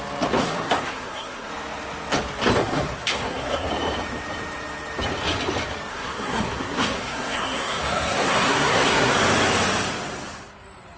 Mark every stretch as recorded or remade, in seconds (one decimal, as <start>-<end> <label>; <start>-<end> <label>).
0.0-0.4 recorded; 0.4-1.5 remade; 1.5-2.6 recorded; 2.6-3.7 remade; 3.7-5.9 recorded; 5.9-9.1 remade; 9.1-11.0 recorded